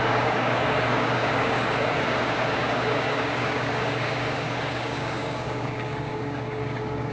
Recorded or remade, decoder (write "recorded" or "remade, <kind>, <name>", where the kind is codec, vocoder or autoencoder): remade, codec, DAC